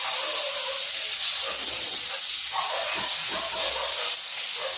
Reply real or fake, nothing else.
real